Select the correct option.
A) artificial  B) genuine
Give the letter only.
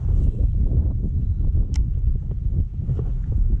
B